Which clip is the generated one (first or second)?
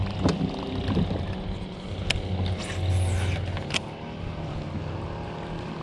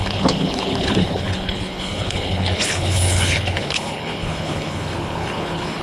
second